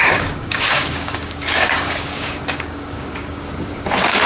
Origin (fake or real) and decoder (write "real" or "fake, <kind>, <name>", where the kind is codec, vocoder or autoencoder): fake, codec, DAC